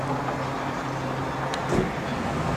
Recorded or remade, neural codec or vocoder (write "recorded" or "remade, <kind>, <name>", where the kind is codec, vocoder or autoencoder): recorded